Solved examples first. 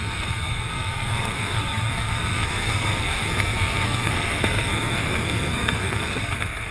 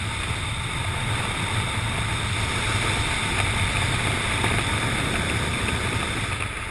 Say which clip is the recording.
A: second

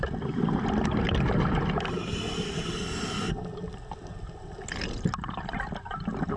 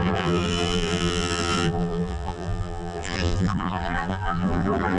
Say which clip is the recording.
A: first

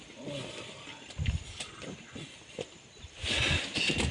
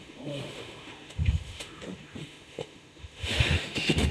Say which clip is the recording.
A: first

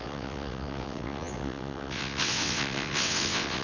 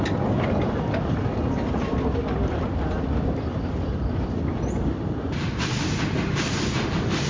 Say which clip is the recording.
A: second